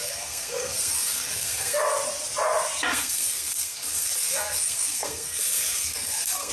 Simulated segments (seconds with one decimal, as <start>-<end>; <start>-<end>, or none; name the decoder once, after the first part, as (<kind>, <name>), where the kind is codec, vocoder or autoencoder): 0.0-1.8 (codec, SNAC); 2.9-6.5